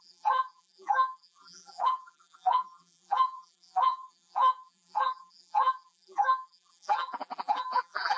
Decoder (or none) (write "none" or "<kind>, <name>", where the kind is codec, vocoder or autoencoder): vocoder, BigVGAN v2